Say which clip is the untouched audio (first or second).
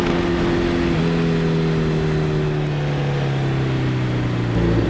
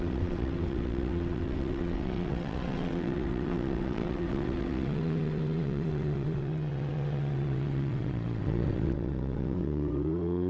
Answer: first